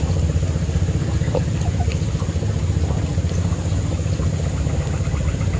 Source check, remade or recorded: recorded